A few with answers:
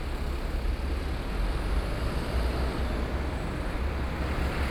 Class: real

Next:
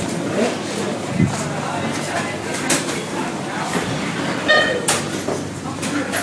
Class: real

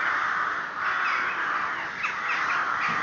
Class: real